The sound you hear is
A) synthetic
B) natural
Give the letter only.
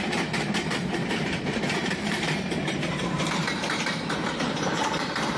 A